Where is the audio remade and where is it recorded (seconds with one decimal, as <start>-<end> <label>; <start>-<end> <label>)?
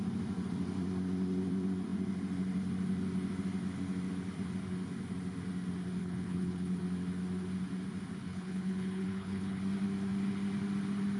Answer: 0.0-6.0 recorded; 6.0-6.8 remade; 6.8-8.2 recorded; 8.2-9.6 remade; 9.6-11.2 recorded